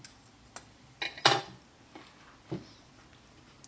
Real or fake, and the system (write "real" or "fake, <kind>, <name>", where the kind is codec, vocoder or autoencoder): real